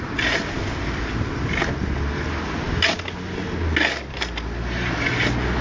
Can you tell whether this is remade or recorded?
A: recorded